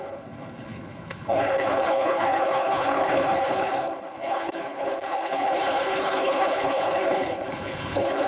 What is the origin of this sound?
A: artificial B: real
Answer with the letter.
A